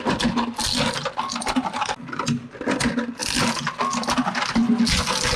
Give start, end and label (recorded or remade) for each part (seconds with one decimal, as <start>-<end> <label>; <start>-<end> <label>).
0.0-5.4 recorded